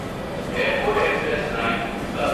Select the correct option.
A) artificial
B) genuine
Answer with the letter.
B